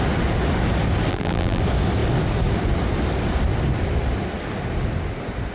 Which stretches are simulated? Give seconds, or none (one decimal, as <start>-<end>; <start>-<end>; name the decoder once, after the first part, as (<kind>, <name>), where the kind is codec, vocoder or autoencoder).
1.1-1.6 (vocoder, BigVGAN v2)